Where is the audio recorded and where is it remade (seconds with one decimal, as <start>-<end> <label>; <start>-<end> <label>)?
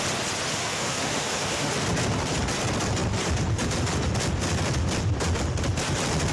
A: 0.0-0.5 recorded; 0.5-1.7 remade; 1.7-6.3 recorded